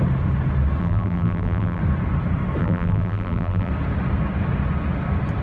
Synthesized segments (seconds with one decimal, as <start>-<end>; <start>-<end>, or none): 0.8-1.8; 2.6-3.7